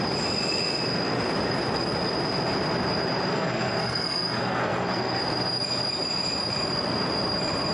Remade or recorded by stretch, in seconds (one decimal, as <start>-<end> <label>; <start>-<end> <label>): 0.0-3.3 recorded; 3.3-5.2 remade; 5.2-7.7 recorded